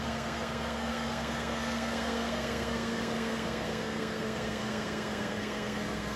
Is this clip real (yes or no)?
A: no